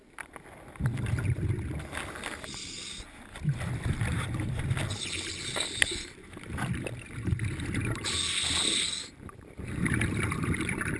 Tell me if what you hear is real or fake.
real